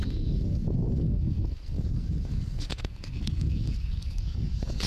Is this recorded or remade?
remade